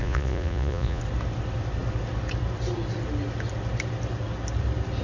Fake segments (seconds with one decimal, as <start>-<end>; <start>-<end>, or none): 0.0-1.0